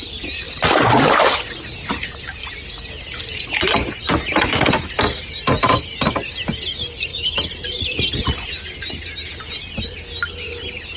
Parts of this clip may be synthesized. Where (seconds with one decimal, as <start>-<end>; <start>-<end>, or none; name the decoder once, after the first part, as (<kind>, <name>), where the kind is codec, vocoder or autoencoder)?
none